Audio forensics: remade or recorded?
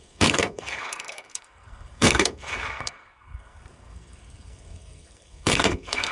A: remade